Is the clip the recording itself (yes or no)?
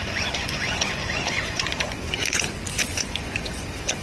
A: no